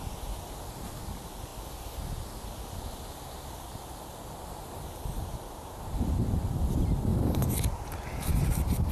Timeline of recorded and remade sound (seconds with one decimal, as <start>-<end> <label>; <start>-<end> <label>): 0.0-8.9 recorded